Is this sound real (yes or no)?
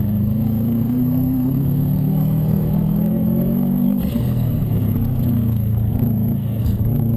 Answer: no